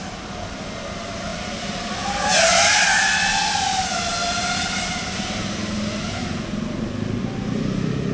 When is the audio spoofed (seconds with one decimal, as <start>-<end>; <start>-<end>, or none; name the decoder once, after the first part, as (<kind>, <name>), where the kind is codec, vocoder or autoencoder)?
none